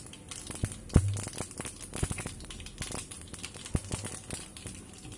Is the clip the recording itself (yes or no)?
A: yes